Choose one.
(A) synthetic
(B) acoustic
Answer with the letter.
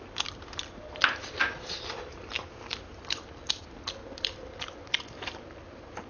B